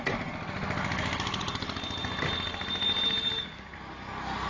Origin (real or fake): real